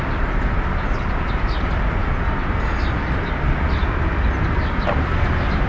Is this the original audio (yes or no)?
yes